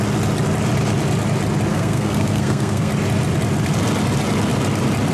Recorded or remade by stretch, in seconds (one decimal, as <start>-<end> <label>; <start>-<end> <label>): 0.0-1.7 recorded; 1.7-2.9 remade; 2.9-5.1 recorded